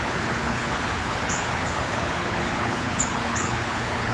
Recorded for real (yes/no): no